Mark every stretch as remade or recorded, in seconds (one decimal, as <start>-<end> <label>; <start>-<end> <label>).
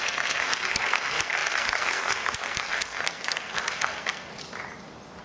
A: 0.0-4.3 remade; 4.3-5.2 recorded